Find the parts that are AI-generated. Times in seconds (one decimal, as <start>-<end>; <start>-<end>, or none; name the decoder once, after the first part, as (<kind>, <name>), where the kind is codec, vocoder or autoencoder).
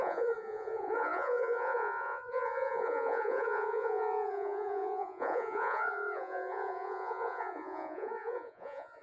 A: 0.0-9.0 (vocoder, Vocos)